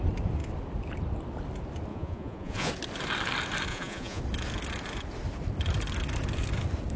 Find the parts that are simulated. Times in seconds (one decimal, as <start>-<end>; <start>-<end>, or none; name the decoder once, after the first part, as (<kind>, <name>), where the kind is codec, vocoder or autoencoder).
1.9-2.7 (vocoder, Vocos); 3.7-4.2